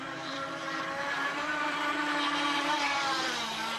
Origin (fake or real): fake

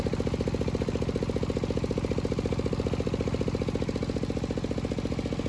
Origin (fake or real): real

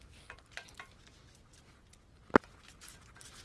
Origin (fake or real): real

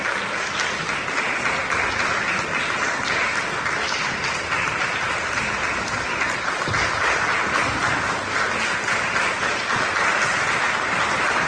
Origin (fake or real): real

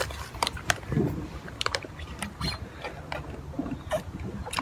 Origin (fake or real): fake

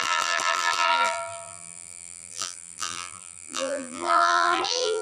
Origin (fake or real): fake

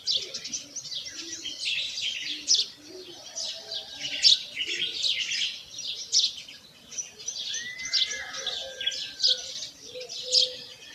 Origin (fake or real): real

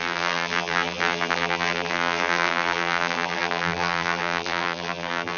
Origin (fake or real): fake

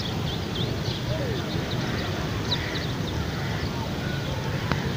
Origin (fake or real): real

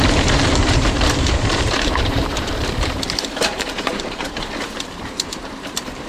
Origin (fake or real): fake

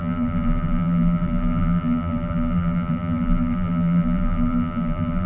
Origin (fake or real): fake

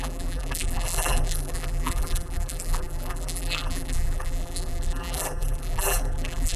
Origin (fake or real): fake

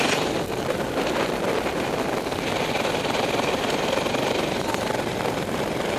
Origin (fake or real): fake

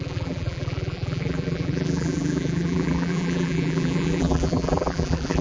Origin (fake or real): fake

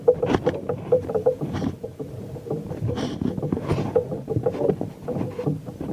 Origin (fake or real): fake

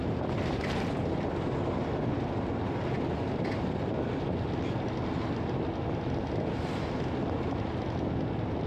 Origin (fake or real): real